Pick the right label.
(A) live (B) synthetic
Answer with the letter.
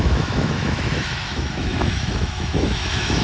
B